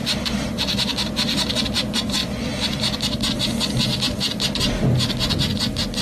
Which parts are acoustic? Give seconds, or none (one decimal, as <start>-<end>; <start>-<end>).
0.6-2.2; 3.3-3.9; 4.7-6.0

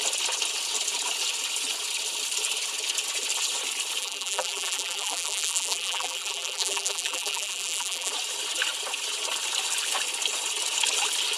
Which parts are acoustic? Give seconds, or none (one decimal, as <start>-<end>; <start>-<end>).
0.0-4.0; 8.1-11.4

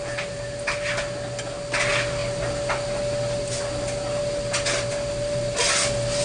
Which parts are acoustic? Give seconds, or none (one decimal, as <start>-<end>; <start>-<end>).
0.0-6.2

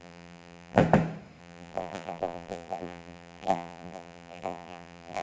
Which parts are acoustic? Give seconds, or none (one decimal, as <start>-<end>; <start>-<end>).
0.8-1.4

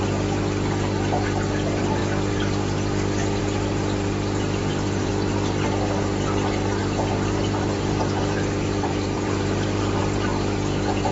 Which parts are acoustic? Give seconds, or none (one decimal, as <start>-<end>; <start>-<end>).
0.0-4.6; 5.1-6.8; 10.0-11.1

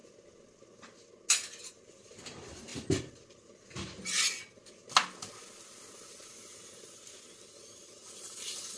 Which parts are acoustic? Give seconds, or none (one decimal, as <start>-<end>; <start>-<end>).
0.0-1.6; 2.7-6.4